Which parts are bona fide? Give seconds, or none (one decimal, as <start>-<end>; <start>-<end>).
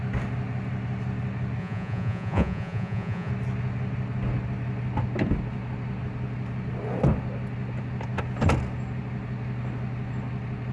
0.0-1.6; 3.3-10.7